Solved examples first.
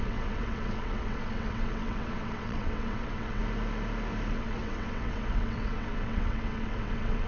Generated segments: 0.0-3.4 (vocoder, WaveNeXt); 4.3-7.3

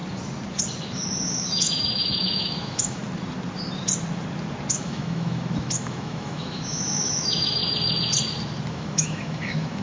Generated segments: 1.3-3.0 (autoencoder, DAC-VAE); 4.7-7.6; 8.7-9.8

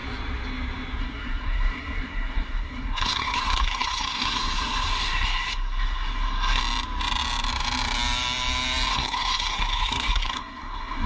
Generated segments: 1.0-6.6 (codec, SNAC); 8.9-11.1